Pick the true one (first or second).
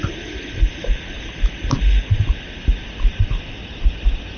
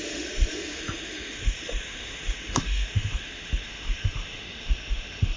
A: first